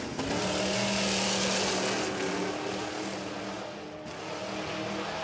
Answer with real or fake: real